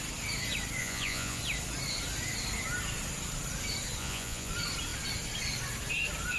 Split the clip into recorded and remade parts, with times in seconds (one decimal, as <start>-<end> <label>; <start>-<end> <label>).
0.0-0.8 recorded; 0.8-1.4 remade; 1.4-4.0 recorded; 4.0-4.5 remade; 4.5-6.4 recorded